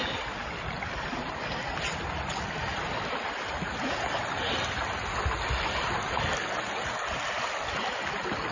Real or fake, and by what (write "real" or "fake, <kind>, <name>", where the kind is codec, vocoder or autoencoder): real